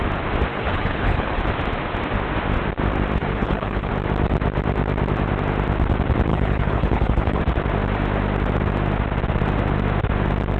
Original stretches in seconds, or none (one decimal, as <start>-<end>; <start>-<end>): 0.0-0.5; 1.4-3.2; 3.9-6.3; 7.4-10.6